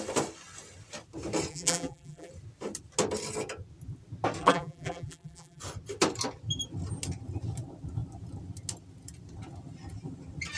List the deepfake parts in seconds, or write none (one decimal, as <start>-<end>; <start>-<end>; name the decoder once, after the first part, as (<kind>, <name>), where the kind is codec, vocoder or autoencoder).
1.5-2.3 (vocoder, BigVGAN v2); 4.4-5.6

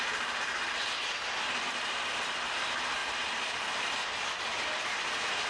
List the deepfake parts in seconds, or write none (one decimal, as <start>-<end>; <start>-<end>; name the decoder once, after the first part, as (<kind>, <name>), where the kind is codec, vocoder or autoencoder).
1.7-2.6 (vocoder, BigVGAN v2); 3.0-3.8